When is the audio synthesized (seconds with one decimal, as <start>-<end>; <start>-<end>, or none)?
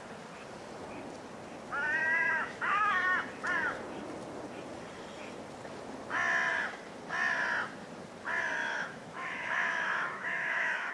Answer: 2.0-2.9; 8.6-10.9